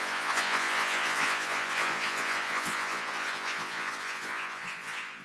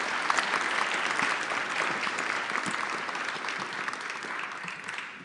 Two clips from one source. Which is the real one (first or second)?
second